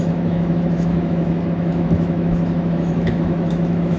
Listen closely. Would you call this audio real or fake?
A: fake